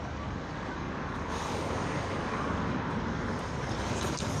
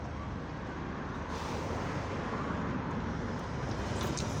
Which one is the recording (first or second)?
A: second